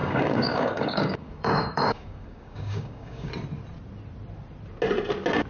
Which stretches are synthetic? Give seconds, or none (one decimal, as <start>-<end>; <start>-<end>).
0.0-3.3

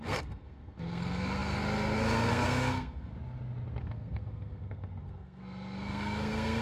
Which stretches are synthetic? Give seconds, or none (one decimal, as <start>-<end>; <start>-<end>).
0.0-3.1; 3.8-6.6

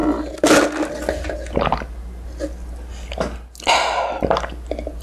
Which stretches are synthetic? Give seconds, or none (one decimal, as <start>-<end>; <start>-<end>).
none

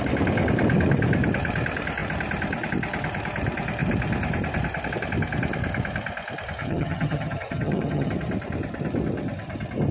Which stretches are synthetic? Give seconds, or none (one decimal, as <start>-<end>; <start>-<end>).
6.6-8.1

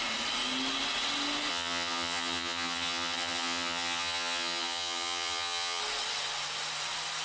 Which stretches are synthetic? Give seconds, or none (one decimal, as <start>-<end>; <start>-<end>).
1.5-5.8

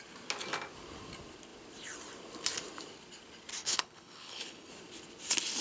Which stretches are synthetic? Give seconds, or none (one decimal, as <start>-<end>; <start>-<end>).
3.6-4.7

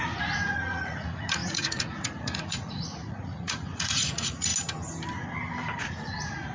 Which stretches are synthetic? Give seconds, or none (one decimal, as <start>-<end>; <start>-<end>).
0.0-4.5; 5.8-6.5